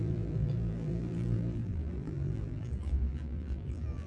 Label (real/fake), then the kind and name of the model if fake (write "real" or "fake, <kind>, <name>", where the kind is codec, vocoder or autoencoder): fake, vocoder, BigVGAN v2